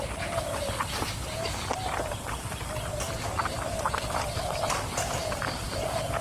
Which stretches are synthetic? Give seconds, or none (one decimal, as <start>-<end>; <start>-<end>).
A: 1.2-4.9